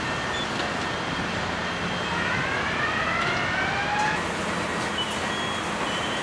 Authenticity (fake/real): real